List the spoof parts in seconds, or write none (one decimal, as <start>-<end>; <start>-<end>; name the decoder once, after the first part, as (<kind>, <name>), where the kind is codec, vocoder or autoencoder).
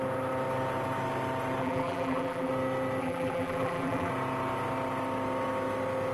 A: 1.6-2.5 (vocoder, BigVGAN v2); 3.0-4.1